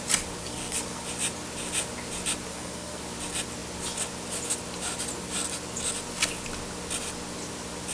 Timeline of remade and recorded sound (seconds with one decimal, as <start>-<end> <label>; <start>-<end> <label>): 0.0-0.4 recorded; 0.4-1.0 remade; 1.0-2.5 recorded; 2.5-3.0 remade; 3.0-7.9 recorded